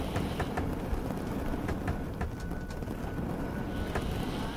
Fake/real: fake